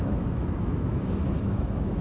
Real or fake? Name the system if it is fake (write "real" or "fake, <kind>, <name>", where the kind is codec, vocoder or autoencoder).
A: fake, autoencoder, DAC-VAE